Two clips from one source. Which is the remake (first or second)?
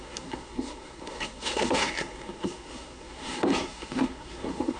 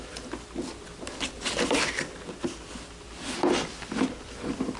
first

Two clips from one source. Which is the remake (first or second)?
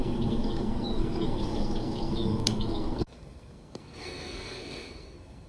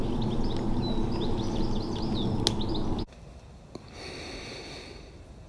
first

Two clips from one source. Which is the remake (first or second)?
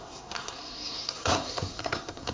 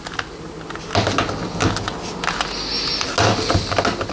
first